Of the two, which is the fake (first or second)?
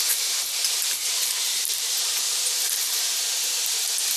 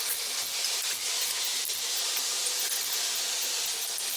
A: first